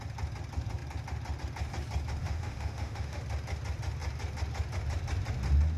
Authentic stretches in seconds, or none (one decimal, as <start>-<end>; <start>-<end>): 0.0-2.2; 3.2-5.8